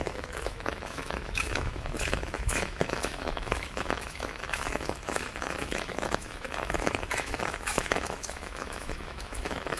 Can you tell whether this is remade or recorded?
remade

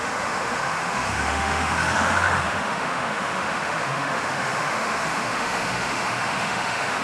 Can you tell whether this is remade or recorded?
remade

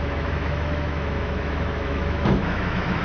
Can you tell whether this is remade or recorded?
remade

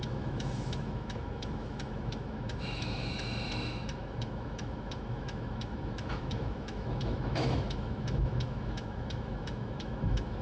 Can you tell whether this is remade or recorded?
remade